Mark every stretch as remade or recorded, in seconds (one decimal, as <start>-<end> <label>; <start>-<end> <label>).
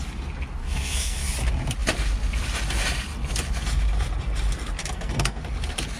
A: 0.0-0.6 recorded; 0.6-1.3 remade; 1.3-4.8 recorded; 4.8-5.4 remade; 5.4-6.0 recorded